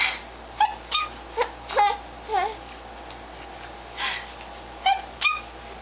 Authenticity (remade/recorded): recorded